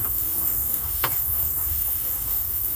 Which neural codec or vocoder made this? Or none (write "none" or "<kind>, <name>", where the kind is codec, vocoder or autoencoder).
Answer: codec, DAC